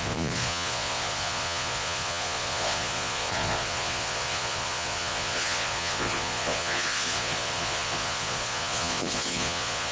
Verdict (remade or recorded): remade